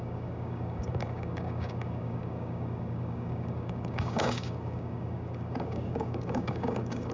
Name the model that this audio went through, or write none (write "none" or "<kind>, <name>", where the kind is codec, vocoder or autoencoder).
codec, DAC